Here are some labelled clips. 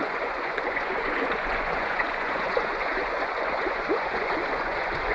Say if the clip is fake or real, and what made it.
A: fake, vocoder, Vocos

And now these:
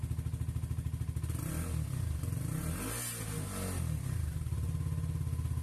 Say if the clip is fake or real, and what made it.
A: real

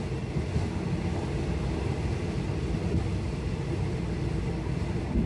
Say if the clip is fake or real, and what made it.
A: real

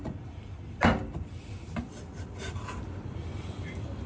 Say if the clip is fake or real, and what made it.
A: fake, vocoder, BigVGAN v2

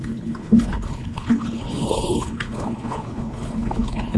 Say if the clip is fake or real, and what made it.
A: fake, codec, HILCodec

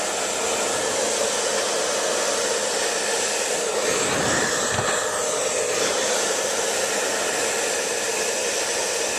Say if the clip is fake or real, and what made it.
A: real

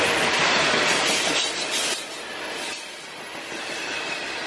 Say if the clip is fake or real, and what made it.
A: real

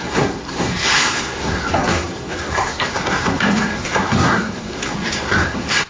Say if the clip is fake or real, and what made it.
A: fake, codec, SNAC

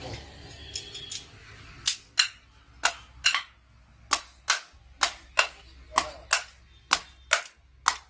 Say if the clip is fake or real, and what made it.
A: real